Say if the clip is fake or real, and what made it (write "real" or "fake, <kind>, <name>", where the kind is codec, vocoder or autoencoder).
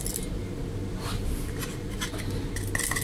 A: real